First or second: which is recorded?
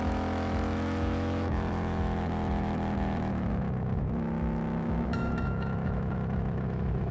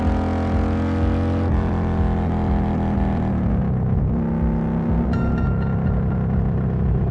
second